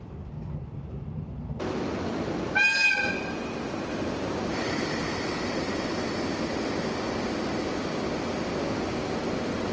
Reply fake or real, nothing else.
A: real